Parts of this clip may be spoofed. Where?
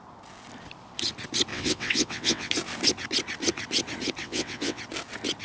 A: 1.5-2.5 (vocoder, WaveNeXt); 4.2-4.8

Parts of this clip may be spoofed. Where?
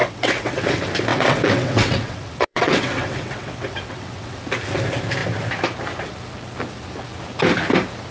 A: 0.0-0.6 (vocoder, WaveNeXt); 1.1-4.4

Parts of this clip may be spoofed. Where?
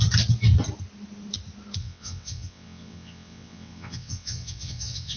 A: 1.8-5.2 (vocoder, WaveNeXt)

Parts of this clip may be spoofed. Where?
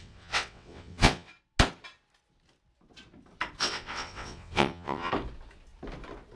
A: 0.0-1.3 (vocoder, WaveNeXt); 3.6-5.1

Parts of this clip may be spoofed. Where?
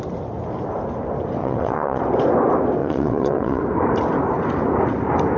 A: 1.4-2.0 (vocoder, WaveNeXt); 2.8-3.6